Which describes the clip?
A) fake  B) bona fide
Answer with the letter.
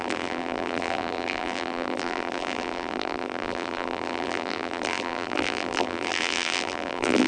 A